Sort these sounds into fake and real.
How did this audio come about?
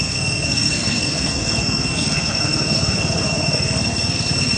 fake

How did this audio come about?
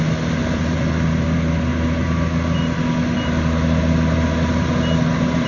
real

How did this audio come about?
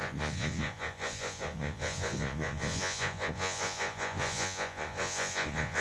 fake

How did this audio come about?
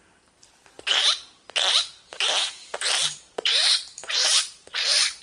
fake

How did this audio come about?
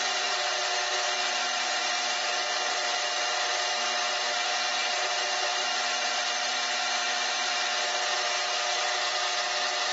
real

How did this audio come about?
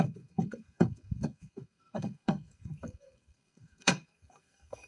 fake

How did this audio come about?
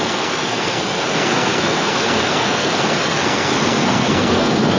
fake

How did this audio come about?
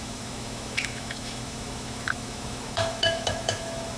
fake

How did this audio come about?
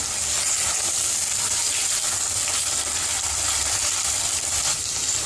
real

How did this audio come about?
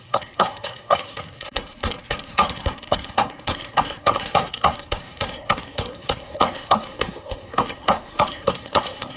fake